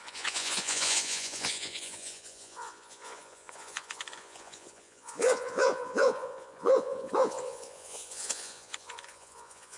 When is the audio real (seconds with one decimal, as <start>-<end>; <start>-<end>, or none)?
none